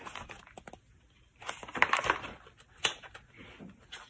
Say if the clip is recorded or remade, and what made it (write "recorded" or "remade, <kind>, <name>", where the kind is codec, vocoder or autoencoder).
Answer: recorded